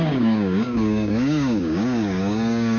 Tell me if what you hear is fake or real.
fake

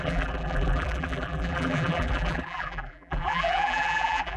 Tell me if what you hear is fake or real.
fake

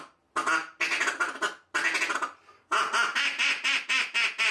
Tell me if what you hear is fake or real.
real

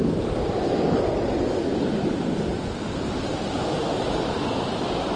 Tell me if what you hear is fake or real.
real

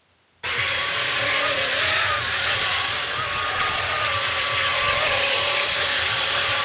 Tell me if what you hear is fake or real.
fake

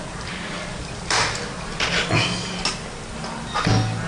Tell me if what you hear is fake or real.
real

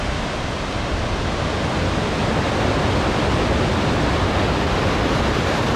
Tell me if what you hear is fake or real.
real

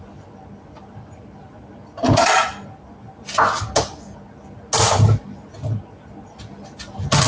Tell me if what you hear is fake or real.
real